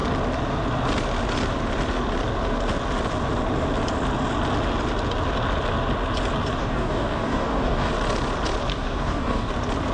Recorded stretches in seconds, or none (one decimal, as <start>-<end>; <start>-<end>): 0.0-6.6; 7.9-8.7; 9.5-9.9